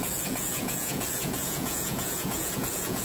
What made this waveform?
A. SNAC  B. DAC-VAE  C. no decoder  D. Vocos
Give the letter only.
D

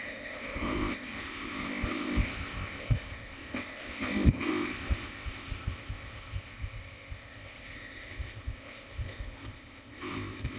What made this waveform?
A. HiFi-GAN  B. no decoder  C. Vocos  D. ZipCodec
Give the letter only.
D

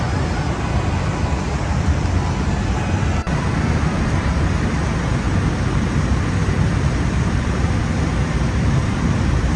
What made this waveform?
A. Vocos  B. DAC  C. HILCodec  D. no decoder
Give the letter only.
D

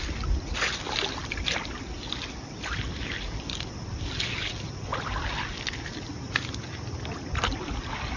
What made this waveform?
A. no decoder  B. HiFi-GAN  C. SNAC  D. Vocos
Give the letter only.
A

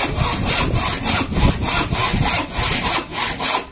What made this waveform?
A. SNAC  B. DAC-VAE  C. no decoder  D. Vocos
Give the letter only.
C